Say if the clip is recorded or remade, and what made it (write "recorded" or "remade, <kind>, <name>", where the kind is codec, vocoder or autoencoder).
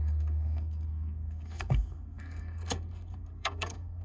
remade, codec, SNAC